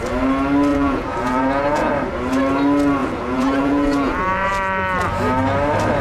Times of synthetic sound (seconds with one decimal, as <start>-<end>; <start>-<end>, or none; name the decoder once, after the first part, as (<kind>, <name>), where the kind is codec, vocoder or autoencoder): 0.7-1.9 (vocoder, Vocos); 3.0-4.5